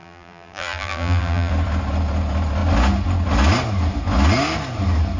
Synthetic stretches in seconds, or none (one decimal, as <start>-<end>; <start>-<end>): 0.0-1.5